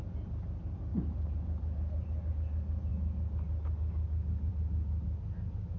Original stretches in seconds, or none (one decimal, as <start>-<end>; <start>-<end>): 0.0-0.9; 2.3-5.8